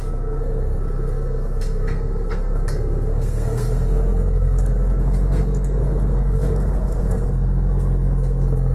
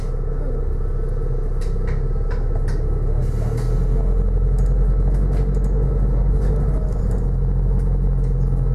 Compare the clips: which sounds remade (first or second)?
first